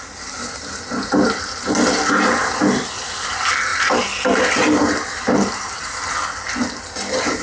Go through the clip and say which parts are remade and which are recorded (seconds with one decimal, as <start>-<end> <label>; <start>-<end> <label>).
0.0-7.4 recorded